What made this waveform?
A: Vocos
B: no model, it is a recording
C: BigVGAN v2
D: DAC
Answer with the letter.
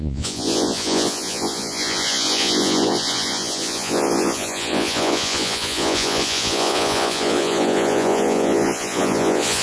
A